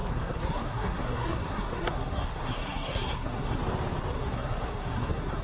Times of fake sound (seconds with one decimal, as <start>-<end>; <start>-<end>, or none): 0.0-3.6; 4.1-5.4

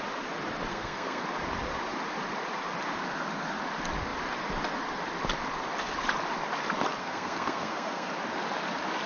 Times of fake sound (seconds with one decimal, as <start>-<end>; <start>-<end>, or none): 0.7-1.2; 7.0-8.1

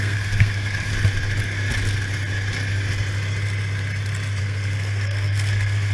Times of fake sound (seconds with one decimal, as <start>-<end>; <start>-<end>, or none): 0.0-0.9; 4.4-5.9

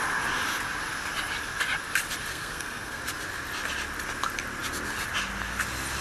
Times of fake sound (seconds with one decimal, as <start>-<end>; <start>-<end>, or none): 2.3-3.0

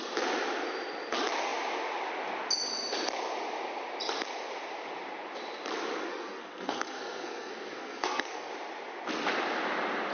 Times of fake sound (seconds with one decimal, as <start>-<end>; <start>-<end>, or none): 6.1-8.5

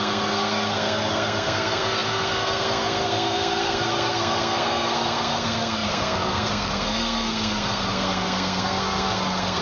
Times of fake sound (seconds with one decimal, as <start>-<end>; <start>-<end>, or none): 0.0-9.6

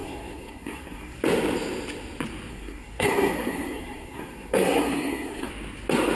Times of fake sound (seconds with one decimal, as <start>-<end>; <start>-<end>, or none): 0.0-1.2; 2.5-5.5

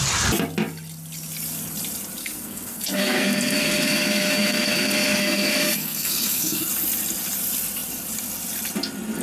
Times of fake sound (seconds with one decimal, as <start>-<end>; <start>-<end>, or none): 2.2-6.7